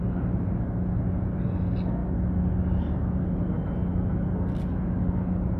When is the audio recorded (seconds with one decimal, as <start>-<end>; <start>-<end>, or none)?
0.0-5.6